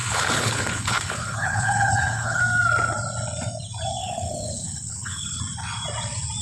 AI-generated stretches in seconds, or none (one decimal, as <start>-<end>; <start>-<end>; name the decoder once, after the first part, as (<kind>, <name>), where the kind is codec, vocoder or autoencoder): 0.0-2.4 (codec, HILCodec); 4.0-5.4